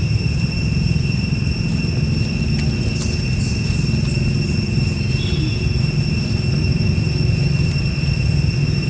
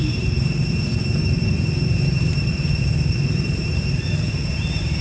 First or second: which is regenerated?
second